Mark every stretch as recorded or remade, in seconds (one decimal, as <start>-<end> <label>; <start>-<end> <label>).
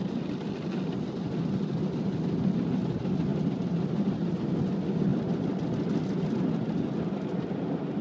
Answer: 0.0-8.0 recorded